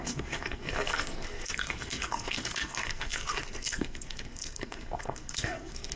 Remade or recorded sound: remade